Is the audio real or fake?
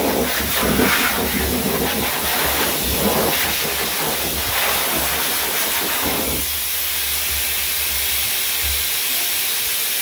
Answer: real